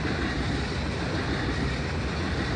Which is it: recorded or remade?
recorded